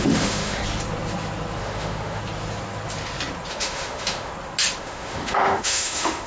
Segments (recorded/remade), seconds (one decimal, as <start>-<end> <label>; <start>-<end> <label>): 0.0-0.6 remade; 0.6-1.6 recorded; 1.6-2.2 remade; 2.2-3.5 recorded; 3.5-4.3 remade; 4.3-4.8 recorded; 4.8-6.3 remade